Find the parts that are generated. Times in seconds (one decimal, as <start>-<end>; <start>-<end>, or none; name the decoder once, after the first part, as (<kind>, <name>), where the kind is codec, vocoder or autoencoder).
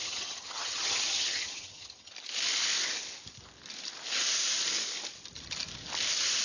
0.0-2.1 (vocoder, HiFi-GAN)